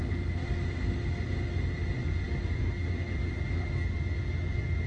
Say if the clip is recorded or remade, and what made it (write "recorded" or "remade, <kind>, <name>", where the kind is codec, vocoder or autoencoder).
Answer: recorded